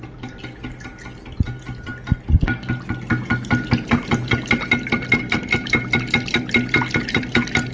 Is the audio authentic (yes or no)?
yes